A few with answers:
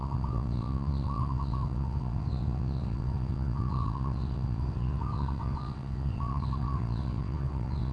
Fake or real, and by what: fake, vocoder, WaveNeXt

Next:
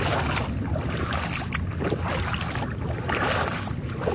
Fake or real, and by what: real